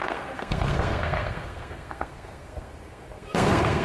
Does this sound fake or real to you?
fake